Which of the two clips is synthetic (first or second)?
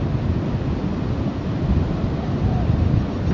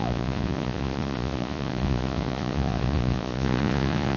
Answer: second